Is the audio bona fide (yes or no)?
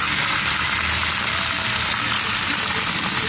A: yes